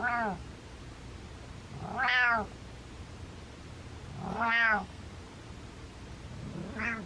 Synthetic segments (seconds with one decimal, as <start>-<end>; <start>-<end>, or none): 4.3-5.0